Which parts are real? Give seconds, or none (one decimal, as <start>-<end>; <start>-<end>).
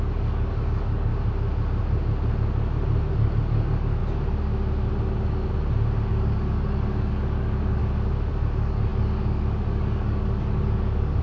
1.1-3.1; 4.0-6.1; 7.8-8.3